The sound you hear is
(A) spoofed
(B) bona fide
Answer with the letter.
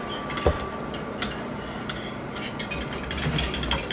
B